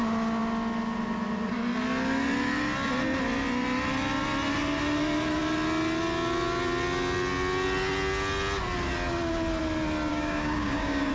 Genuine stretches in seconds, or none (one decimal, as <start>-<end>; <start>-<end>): 0.0-10.1